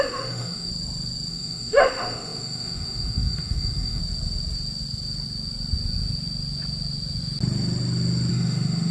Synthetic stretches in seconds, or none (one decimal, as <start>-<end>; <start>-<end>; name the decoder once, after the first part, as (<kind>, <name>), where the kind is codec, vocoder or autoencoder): 0.0-0.7 (autoencoder, DAC-VAE); 1.3-4.0; 8.3-8.9